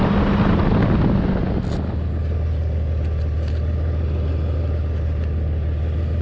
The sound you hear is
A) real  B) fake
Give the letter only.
A